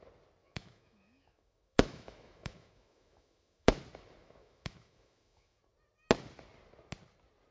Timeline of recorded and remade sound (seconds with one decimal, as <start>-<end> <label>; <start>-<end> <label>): 0.0-0.4 recorded; 0.4-3.8 remade; 3.8-4.2 recorded; 4.2-5.6 remade; 5.6-7.5 recorded